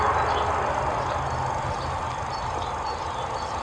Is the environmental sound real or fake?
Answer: real